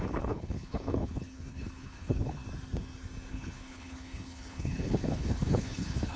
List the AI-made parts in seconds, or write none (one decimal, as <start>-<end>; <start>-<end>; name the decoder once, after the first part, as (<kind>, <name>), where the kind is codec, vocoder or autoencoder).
0.0-2.4 (codec, HILCodec); 3.3-6.2